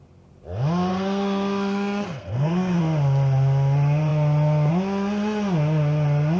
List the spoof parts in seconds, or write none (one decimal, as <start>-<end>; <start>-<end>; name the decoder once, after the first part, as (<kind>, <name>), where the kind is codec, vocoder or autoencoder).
0.9-2.8 (codec, SNAC)